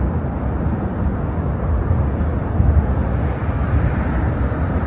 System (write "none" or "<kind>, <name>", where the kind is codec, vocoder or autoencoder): none